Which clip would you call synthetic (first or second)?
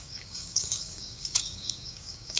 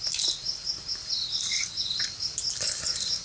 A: first